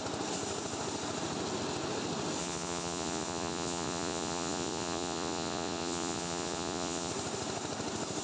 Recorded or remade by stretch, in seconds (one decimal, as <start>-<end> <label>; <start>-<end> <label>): 0.0-2.4 recorded; 2.4-7.1 remade; 7.1-8.2 recorded